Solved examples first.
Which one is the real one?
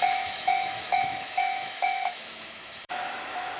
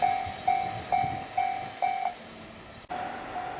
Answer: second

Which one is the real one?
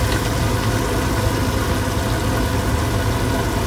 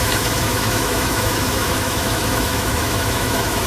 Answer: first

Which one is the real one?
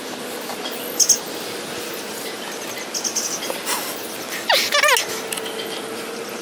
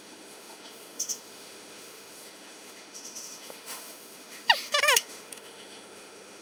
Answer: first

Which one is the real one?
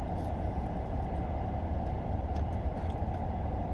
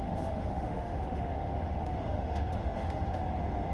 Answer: first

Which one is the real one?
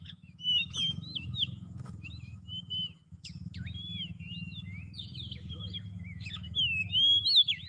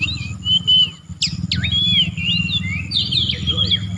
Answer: second